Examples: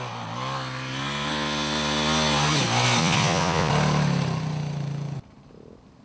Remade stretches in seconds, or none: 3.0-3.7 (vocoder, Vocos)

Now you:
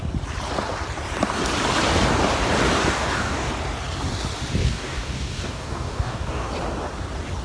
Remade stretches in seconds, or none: 2.8-3.5 (codec, DAC); 4.6-6.5

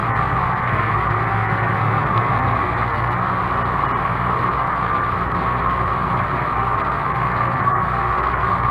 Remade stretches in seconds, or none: 0.0-3.4 (codec, SNAC); 4.0-8.7

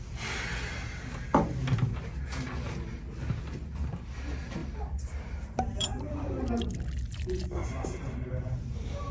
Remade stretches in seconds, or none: 4.6-6.7 (vocoder, BigVGAN v2); 7.6-9.1

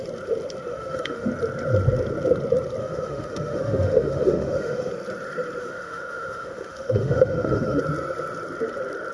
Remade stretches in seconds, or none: 0.7-1.3 (autoencoder, DAC-VAE); 2.8-4.9; 5.6-7.8

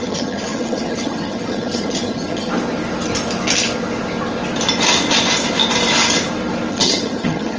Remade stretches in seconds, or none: 0.0-2.5 (vocoder, HiFi-GAN); 6.7-7.6